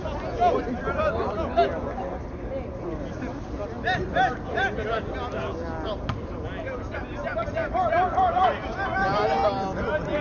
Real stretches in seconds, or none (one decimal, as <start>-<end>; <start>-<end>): 0.0-10.2